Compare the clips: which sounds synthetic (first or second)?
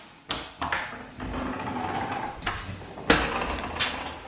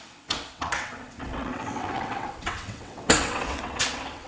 second